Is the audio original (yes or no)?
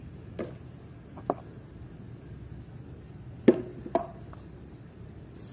yes